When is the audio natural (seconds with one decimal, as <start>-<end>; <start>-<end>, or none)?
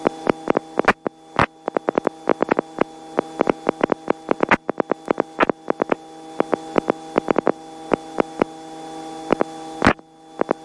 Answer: 0.0-10.6